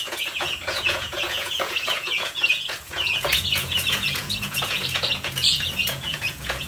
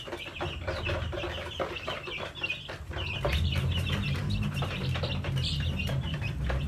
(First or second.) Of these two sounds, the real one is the second